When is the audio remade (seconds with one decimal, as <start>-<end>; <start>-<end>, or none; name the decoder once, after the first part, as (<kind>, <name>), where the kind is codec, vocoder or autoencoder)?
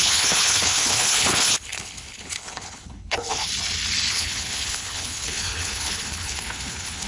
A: 0.0-3.5 (codec, HILCodec); 4.1-7.1